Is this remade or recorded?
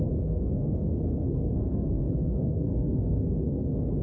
remade